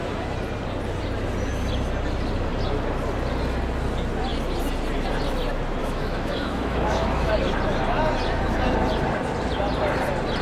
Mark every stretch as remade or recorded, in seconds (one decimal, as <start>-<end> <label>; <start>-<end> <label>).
0.0-5.8 recorded; 5.8-7.3 remade; 7.3-10.4 recorded